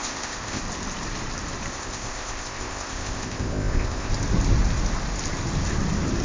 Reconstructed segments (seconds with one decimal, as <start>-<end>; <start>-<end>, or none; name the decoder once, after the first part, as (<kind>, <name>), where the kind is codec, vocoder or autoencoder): 0.0-0.6 (codec, ZipCodec); 1.7-4.1